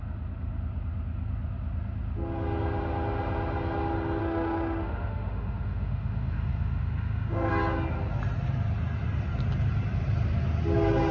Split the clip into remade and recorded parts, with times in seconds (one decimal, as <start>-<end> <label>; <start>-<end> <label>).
0.0-4.2 recorded; 4.2-7.5 remade; 7.5-11.1 recorded